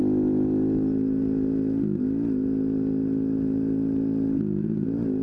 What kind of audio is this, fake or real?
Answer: real